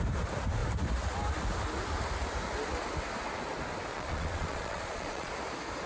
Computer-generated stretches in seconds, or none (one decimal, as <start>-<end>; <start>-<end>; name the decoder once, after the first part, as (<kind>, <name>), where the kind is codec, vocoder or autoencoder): 3.9-5.3 (vocoder, Vocos)